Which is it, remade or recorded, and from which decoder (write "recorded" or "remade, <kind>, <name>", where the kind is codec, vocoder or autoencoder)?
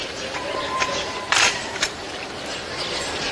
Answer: remade, vocoder, BigVGAN v2